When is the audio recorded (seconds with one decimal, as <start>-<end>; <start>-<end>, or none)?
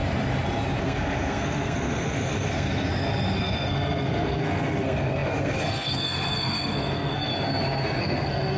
0.0-0.8; 2.9-3.4; 7.3-8.0